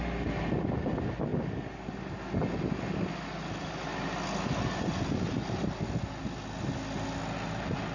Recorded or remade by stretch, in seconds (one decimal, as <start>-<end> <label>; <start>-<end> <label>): 0.0-7.9 recorded